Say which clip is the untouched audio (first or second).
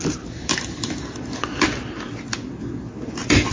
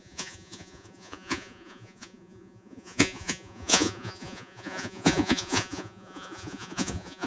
first